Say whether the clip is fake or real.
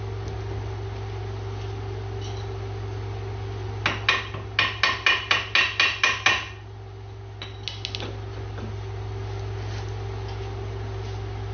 real